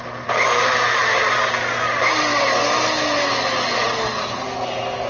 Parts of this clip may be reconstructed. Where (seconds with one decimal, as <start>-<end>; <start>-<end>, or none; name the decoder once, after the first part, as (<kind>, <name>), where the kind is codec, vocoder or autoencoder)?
0.0-2.3 (vocoder, BigVGAN v2); 3.9-5.1